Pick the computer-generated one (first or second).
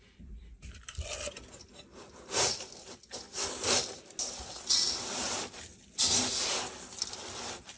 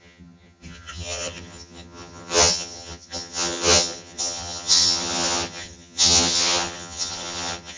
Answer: second